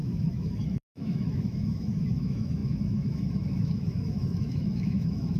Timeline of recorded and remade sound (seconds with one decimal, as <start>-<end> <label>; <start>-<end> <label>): 0.0-5.4 remade